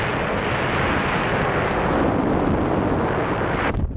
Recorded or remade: recorded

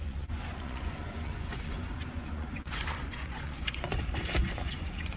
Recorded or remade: remade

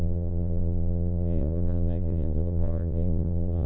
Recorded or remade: remade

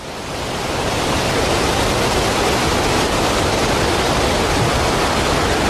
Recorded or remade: recorded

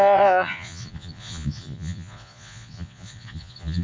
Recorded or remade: remade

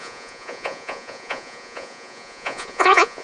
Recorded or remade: remade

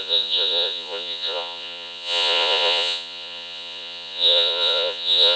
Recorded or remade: remade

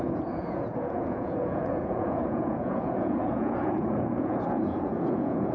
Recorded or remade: remade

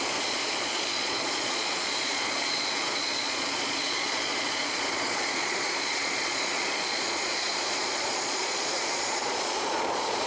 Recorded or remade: remade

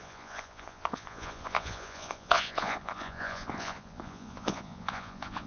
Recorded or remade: remade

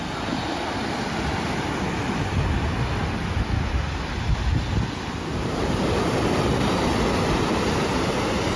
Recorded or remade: recorded